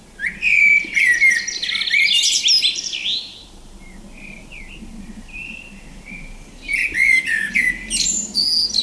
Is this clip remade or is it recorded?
recorded